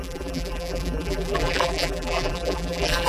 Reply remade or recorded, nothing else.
remade